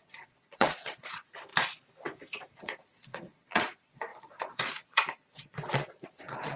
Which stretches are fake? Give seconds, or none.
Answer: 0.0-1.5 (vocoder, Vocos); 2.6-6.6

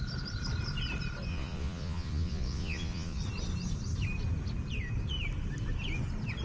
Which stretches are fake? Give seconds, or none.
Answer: 1.3-3.2 (vocoder, Vocos)

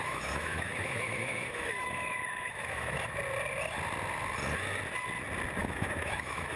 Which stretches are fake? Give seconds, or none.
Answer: 0.0-3.2 (autoencoder, DAC-VAE); 5.6-6.6